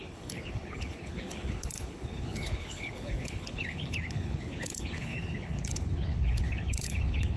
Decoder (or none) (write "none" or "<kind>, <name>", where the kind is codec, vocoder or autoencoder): codec, HILCodec